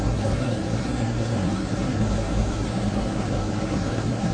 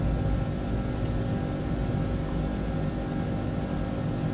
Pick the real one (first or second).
second